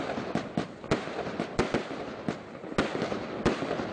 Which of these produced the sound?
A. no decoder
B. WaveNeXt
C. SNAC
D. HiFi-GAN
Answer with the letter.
A